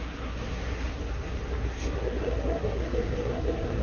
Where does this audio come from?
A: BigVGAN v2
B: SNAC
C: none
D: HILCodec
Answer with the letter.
B